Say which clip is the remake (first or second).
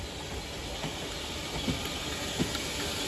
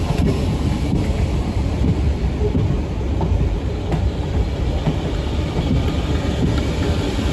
second